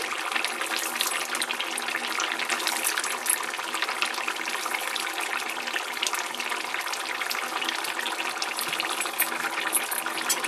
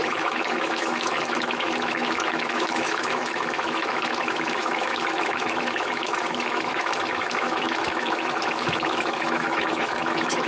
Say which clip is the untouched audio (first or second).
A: first